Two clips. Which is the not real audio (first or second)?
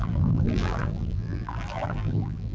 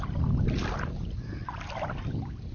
first